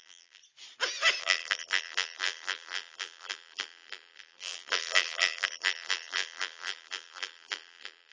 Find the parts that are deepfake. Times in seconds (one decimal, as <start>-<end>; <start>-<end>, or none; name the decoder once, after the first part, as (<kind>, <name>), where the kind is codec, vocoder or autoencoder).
0.0-0.4 (vocoder, BigVGAN v2); 1.2-8.1